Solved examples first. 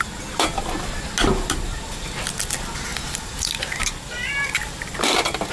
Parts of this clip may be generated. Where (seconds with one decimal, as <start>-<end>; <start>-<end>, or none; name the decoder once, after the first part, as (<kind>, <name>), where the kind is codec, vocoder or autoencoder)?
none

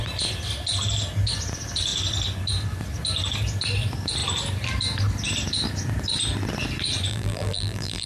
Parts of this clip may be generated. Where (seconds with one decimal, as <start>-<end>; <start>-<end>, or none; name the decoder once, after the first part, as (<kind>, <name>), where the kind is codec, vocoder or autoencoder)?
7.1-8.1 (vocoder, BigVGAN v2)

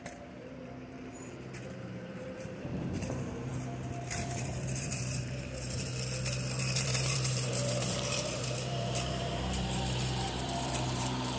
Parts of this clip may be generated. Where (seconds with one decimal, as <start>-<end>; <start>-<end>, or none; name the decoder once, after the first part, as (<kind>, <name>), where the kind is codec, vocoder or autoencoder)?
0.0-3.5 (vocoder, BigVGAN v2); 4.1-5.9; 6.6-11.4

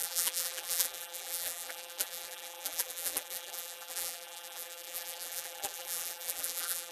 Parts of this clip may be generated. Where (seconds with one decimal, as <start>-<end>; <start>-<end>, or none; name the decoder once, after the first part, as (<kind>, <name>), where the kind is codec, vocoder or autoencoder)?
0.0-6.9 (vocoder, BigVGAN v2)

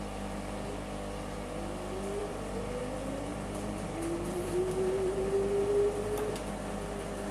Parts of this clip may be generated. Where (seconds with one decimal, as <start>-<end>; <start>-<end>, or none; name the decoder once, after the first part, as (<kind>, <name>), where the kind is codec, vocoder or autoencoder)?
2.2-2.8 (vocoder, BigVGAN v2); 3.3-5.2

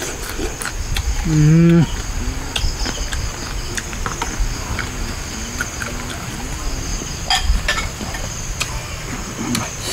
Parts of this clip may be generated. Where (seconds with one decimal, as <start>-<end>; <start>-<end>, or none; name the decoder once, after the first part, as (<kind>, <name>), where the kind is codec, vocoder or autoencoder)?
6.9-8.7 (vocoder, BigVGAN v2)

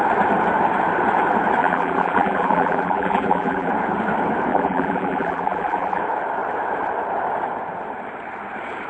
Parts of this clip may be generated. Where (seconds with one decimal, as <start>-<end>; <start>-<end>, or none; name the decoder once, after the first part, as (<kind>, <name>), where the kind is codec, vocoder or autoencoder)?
1.6-3.7 (vocoder, BigVGAN v2); 4.5-6.0